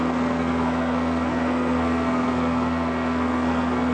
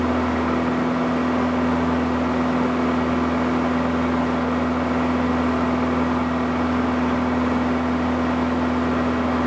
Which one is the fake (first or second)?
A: first